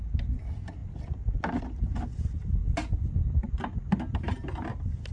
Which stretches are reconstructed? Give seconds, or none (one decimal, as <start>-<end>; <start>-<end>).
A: none

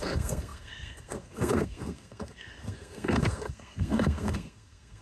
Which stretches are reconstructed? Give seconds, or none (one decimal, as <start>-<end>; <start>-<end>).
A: 0.0-5.0

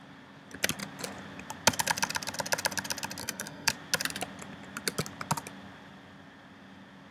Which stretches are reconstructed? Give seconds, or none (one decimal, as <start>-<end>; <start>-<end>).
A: 3.2-3.7

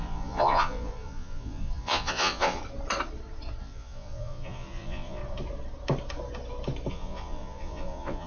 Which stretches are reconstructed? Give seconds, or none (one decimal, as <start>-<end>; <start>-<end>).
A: 0.0-2.6; 3.6-5.2; 6.9-8.3

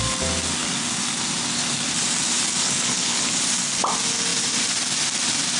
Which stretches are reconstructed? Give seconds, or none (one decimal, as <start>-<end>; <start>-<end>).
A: 2.6-3.3